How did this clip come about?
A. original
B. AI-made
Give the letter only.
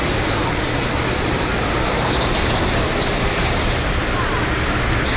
A